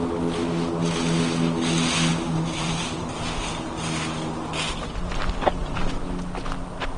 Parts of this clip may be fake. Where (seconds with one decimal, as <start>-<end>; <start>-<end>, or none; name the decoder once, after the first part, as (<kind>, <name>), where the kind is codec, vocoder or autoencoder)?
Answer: 2.1-3.1 (vocoder, BigVGAN v2)